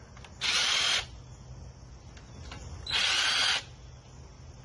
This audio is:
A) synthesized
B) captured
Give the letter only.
B